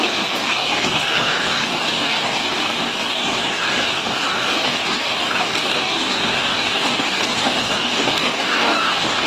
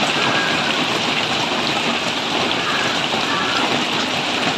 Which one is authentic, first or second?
second